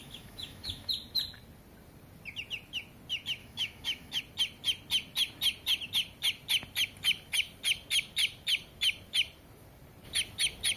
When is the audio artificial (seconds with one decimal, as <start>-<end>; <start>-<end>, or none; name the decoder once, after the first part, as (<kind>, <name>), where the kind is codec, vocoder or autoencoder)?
0.0-0.9 (autoencoder, DAC-VAE); 3.4-4.2